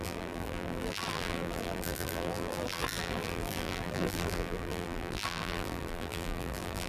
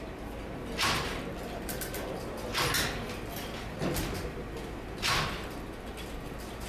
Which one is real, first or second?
second